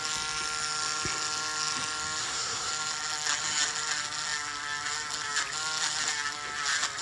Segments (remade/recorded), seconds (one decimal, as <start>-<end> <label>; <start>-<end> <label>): 0.0-2.2 recorded; 2.2-2.7 remade; 2.7-7.0 recorded